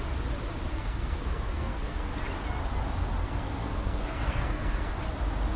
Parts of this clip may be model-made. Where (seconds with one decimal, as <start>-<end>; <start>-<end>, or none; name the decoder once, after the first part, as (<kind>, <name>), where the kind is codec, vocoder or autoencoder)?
0.7-2.1 (codec, SNAC); 3.2-5.0